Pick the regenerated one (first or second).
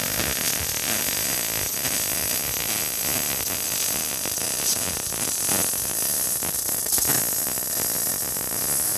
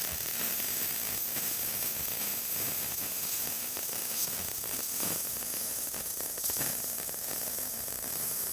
second